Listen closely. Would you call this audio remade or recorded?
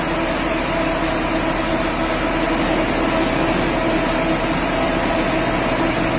recorded